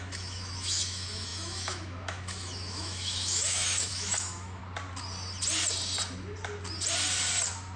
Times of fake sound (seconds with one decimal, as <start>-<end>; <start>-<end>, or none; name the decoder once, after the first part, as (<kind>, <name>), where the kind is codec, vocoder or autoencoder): 0.0-4.6 (autoencoder, DAC-VAE)